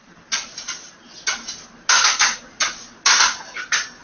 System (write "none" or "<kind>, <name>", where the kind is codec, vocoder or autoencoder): none